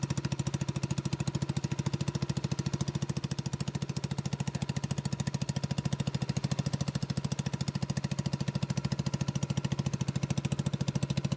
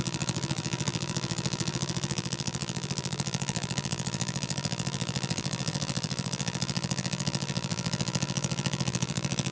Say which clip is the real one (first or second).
first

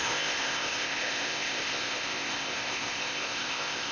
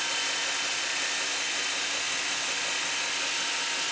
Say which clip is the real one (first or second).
second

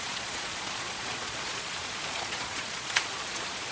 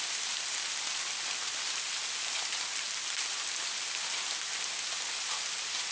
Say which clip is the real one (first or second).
second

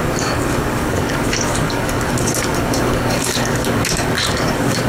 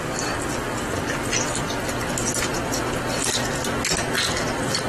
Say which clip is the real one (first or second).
second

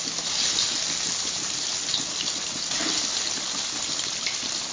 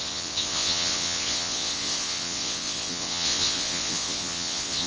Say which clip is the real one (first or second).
first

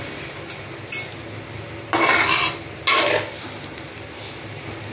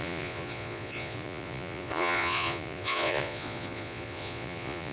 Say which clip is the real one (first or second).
first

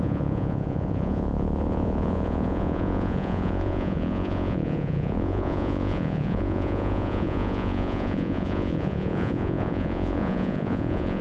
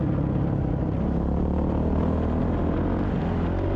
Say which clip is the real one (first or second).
second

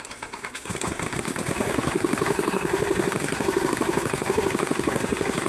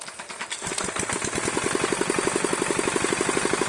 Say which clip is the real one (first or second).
second